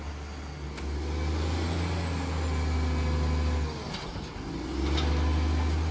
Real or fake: real